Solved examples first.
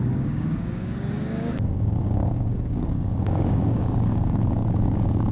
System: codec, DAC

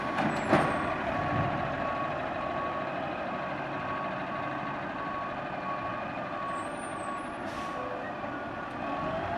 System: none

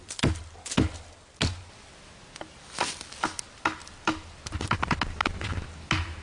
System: none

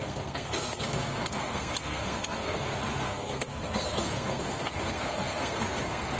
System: codec, SNAC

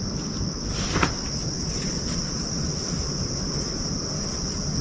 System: none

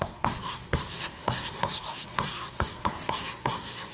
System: codec, SNAC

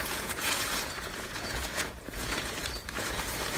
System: vocoder, Vocos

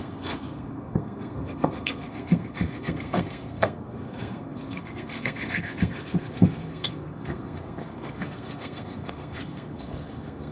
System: codec, SNAC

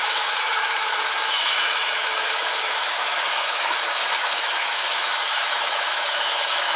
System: autoencoder, DAC-VAE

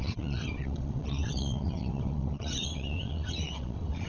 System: vocoder, WaveNeXt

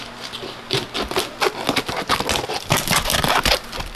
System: none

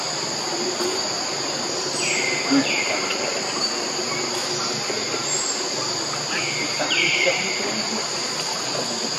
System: none